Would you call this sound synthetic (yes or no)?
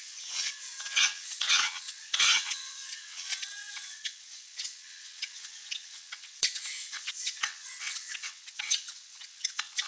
yes